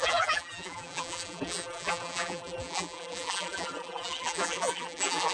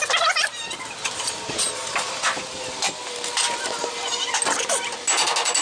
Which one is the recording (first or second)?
second